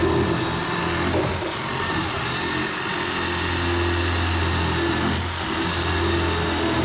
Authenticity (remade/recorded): recorded